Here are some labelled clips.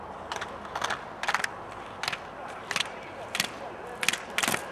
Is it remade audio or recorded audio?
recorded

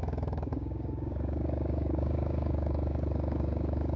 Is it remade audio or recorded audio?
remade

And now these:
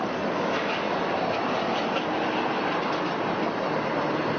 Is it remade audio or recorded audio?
recorded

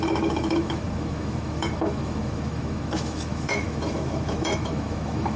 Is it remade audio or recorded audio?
remade